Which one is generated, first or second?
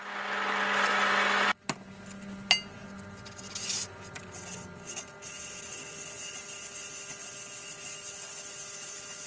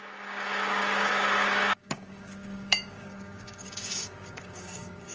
second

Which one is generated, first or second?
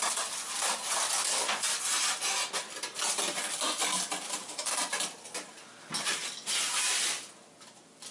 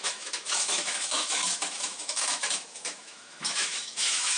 second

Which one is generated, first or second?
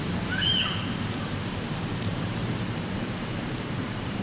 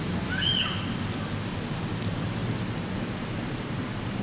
first